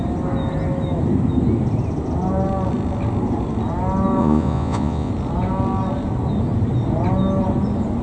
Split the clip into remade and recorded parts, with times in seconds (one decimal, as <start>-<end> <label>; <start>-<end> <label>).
0.0-4.2 recorded; 4.2-5.1 remade; 5.1-8.0 recorded